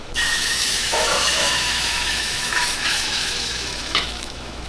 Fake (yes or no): yes